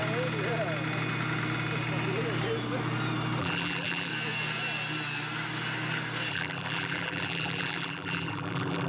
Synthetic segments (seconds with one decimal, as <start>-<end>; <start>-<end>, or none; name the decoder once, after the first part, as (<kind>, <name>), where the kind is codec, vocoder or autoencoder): 3.4-4.1 (vocoder, BigVGAN v2); 6.3-8.9